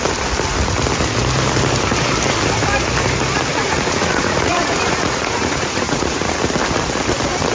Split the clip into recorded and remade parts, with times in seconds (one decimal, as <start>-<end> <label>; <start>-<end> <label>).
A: 0.0-3.5 recorded; 3.5-6.3 remade; 6.3-7.5 recorded